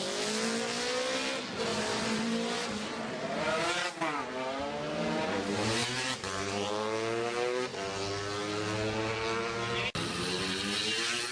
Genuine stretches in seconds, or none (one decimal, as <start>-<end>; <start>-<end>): 0.0-1.7; 4.6-5.8; 6.7-11.3